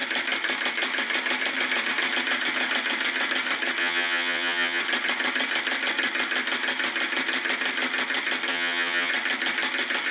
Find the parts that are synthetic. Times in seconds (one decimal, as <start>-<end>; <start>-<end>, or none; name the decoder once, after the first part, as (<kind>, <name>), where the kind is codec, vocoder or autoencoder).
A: 3.8-4.8 (vocoder, HiFi-GAN); 8.5-9.1